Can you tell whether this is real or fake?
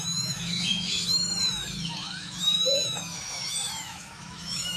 fake